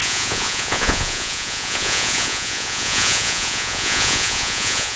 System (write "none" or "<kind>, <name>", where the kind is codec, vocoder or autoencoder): vocoder, Vocos